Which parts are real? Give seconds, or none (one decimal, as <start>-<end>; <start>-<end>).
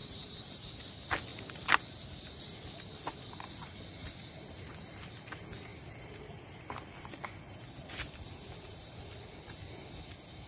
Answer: 0.9-1.3; 1.8-10.5